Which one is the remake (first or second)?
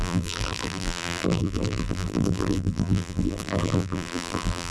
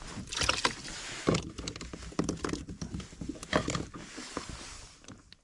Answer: first